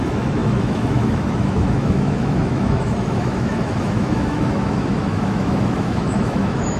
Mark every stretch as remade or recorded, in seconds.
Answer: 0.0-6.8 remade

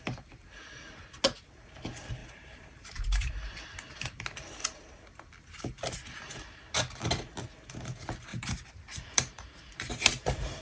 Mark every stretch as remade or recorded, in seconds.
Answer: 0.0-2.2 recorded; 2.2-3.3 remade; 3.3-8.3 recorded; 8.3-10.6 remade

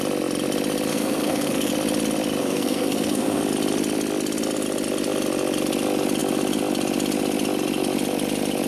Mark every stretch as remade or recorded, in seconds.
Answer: 0.0-0.9 recorded; 0.9-1.7 remade; 1.7-2.4 recorded; 2.4-3.4 remade; 3.4-8.7 recorded